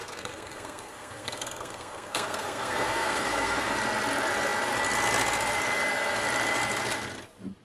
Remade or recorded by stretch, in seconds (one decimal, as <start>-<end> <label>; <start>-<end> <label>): 0.0-3.7 remade; 3.7-7.6 recorded